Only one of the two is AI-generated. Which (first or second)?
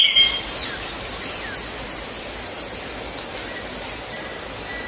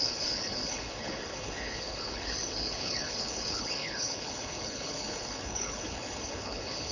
second